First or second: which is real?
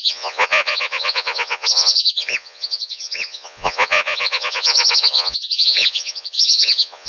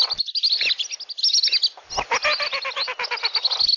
second